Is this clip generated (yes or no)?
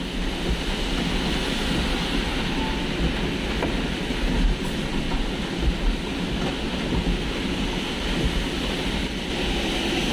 no